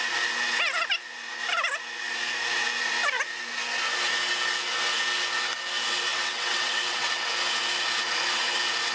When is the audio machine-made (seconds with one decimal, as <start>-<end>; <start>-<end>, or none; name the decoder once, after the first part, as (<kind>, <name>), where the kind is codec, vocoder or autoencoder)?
6.1-7.3 (vocoder, WaveNeXt)